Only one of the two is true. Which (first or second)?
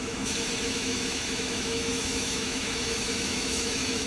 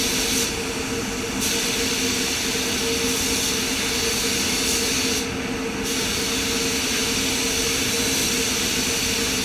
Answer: second